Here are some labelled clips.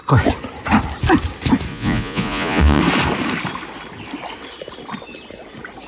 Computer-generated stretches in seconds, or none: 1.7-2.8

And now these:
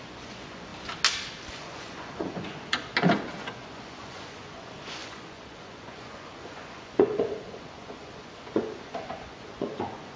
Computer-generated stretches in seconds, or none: 0.0-0.7; 1.5-2.9; 3.5-10.2

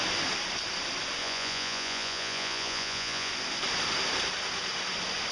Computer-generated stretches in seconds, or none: 1.2-3.3

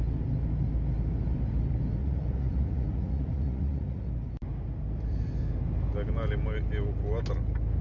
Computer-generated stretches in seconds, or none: 2.0-4.1

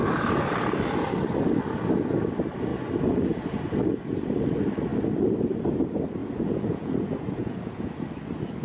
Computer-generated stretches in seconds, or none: 6.2-7.9

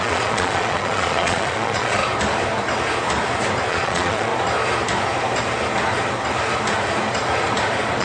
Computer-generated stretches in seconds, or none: 0.0-2.0; 3.7-4.3